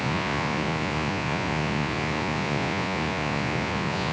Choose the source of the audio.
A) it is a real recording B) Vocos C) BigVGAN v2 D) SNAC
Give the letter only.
B